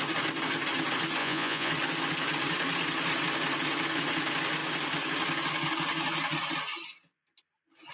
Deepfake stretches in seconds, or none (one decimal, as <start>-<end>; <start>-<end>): 1.2-1.7